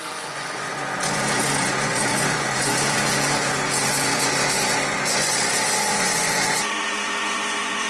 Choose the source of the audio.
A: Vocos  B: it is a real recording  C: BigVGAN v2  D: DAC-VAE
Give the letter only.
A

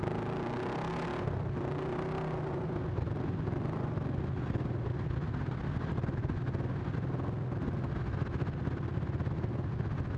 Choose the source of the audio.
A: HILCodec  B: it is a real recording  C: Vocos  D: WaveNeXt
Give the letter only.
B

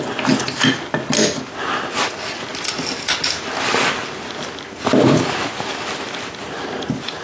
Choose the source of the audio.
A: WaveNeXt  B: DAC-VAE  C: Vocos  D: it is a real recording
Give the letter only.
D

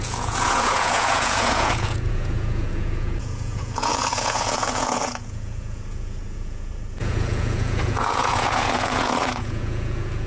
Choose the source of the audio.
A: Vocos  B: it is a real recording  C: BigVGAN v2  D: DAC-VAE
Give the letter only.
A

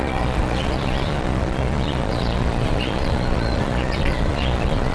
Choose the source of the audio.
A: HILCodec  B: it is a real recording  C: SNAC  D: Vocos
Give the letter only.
D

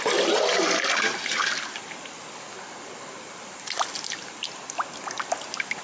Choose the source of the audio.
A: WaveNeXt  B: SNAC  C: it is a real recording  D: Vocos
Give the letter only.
C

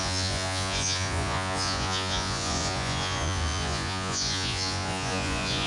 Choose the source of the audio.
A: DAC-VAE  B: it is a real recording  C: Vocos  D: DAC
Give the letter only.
C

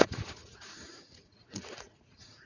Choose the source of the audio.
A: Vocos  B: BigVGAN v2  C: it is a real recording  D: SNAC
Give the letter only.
A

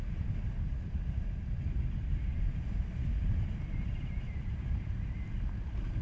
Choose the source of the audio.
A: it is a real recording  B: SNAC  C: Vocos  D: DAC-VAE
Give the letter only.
A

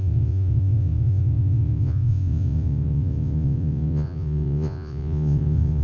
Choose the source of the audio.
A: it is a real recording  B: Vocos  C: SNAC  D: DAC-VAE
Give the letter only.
B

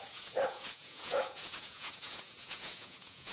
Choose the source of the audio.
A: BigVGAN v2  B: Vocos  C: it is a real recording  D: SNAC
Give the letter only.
B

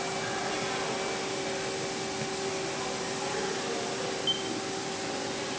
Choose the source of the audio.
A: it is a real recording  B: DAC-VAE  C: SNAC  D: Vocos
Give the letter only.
A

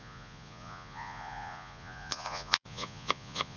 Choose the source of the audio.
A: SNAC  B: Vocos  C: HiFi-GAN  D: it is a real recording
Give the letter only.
B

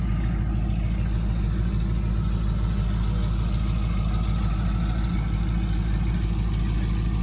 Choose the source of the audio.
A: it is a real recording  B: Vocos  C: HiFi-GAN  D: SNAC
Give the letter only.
A